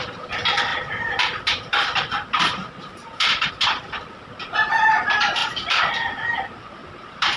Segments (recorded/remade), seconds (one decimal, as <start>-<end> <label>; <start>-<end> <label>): 0.0-0.7 recorded; 0.7-3.5 remade; 3.5-5.4 recorded; 5.4-5.9 remade; 5.9-6.8 recorded; 6.8-7.4 remade